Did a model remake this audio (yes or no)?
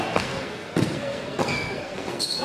yes